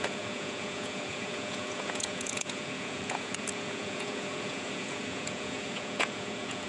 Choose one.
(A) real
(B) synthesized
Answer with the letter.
B